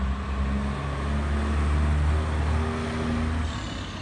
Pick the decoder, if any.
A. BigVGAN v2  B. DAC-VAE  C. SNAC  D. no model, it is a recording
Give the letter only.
D